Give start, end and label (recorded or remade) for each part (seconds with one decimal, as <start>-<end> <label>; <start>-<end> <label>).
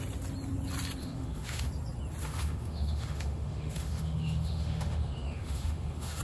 0.0-1.0 recorded; 1.0-1.7 remade; 1.7-2.2 recorded; 2.2-6.2 remade